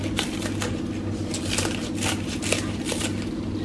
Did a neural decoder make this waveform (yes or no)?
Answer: no